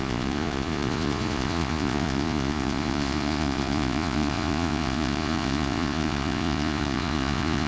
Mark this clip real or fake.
fake